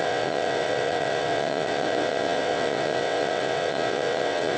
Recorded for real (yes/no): no